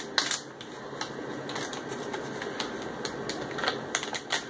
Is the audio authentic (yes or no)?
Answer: yes